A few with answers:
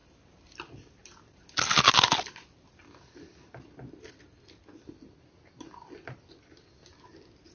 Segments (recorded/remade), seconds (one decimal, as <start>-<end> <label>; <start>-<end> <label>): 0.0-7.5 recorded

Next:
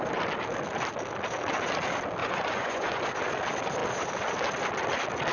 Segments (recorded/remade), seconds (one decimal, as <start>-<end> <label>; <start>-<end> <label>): 0.0-2.2 recorded; 2.2-3.0 remade; 3.0-5.3 recorded

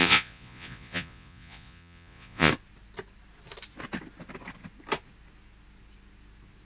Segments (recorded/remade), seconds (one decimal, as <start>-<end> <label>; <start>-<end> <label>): 0.0-2.5 remade; 2.5-6.7 recorded